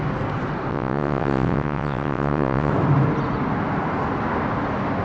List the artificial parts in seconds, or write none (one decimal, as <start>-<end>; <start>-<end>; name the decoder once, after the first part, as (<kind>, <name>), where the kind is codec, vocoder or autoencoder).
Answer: 0.7-2.7 (vocoder, WaveNeXt)